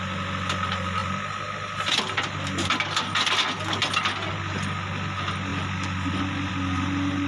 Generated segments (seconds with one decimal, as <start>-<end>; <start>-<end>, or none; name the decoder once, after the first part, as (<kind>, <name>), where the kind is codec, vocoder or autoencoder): none